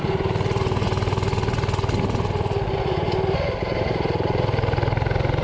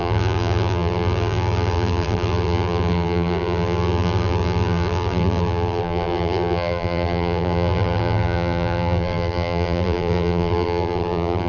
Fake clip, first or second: second